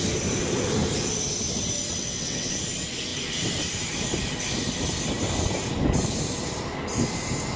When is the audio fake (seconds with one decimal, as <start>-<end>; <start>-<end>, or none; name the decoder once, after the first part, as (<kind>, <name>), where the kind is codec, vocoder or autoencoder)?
2.0-2.5 (vocoder, WaveNeXt)